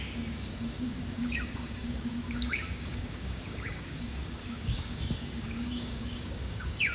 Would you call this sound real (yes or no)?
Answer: no